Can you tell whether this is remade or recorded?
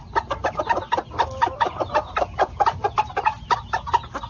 recorded